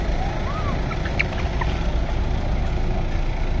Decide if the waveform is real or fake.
real